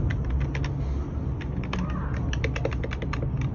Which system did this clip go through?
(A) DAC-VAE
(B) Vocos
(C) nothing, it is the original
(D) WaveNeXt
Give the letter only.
C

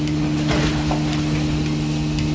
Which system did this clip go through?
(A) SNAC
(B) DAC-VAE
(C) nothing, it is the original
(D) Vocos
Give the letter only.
C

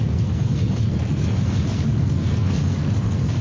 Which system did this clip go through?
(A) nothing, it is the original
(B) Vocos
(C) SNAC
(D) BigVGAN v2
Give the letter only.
C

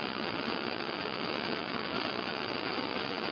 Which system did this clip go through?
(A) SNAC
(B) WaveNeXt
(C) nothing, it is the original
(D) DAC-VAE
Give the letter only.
B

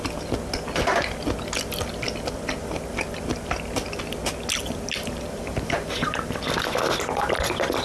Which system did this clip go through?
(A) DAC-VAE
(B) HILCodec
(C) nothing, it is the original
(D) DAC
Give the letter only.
C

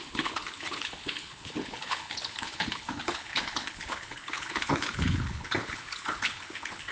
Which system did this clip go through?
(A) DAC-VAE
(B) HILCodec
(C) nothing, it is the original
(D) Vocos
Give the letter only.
B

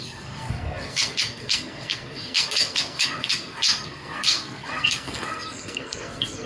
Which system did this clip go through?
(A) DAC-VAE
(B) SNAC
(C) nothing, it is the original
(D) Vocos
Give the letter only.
B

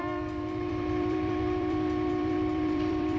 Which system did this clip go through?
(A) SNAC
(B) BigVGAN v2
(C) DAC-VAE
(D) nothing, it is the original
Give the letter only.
B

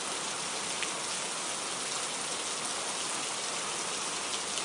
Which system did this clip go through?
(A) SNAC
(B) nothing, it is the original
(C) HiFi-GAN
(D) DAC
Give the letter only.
B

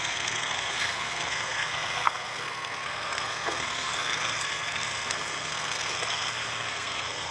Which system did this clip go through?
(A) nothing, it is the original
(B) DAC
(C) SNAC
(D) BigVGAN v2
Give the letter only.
C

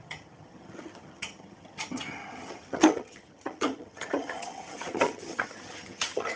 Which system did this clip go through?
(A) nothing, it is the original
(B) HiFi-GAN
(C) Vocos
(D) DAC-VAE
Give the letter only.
B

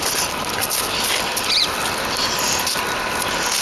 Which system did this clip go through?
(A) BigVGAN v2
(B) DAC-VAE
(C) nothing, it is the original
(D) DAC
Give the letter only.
A